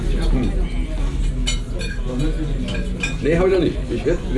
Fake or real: real